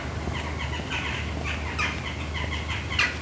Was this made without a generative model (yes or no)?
yes